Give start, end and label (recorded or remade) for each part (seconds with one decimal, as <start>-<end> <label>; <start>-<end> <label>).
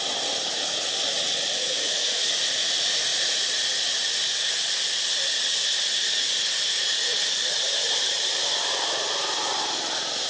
0.0-1.6 recorded; 1.6-2.3 remade; 2.3-10.3 recorded